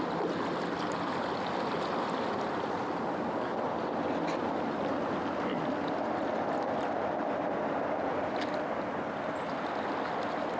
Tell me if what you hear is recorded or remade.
recorded